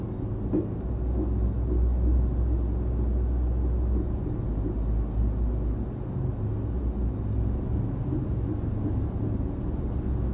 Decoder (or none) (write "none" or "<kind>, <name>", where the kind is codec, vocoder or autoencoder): none